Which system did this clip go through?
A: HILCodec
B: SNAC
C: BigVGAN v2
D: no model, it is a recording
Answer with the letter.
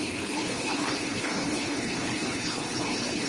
A